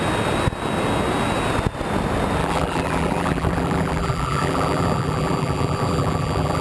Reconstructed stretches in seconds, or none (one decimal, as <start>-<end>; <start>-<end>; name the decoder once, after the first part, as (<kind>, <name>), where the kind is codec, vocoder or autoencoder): 2.4-6.6 (vocoder, BigVGAN v2)